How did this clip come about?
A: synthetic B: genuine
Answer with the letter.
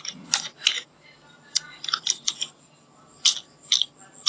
B